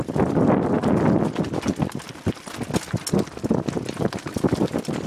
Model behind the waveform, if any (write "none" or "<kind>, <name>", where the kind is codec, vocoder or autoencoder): none